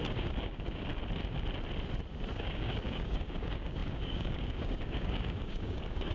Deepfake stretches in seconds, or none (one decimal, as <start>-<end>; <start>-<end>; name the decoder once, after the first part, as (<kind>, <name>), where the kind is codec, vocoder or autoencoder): 0.0-0.9 (codec, DAC); 2.3-6.1